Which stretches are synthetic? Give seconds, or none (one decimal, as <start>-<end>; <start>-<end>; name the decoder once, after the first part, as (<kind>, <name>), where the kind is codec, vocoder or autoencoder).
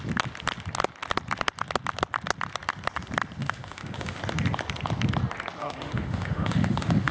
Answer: 3.4-4.2 (autoencoder, DAC-VAE); 5.6-7.1